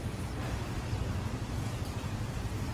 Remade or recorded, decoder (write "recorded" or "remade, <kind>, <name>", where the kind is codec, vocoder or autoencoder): remade, vocoder, BigVGAN v2